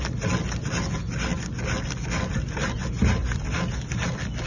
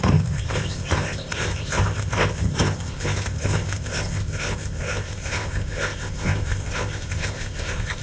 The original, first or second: first